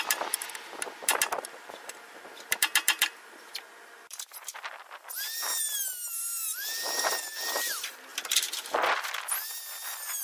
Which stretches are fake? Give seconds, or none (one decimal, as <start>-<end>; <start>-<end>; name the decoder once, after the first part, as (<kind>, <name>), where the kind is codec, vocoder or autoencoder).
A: none